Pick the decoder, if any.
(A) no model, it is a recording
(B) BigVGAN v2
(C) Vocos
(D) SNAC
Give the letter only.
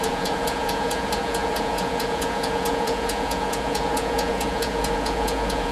C